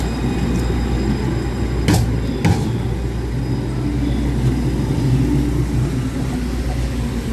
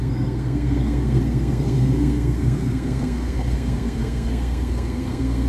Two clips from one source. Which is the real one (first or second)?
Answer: first